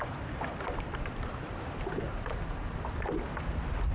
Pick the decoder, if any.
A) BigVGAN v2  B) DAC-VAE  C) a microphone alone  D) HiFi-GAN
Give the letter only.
A